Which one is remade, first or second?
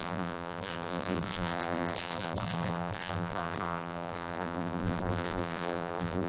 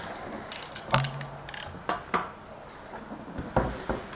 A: first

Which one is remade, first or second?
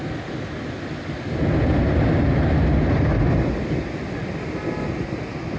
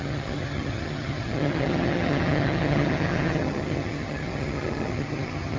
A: second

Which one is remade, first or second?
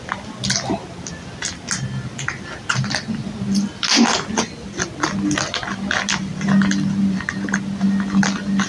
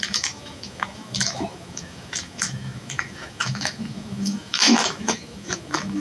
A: second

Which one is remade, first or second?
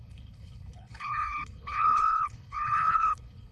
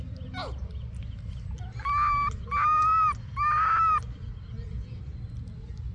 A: first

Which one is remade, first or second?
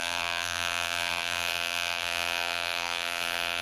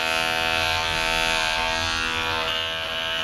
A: first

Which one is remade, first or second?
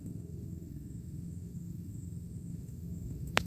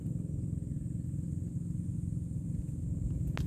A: first